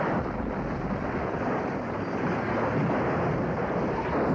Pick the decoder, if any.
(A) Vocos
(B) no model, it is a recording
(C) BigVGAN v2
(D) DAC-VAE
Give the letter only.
B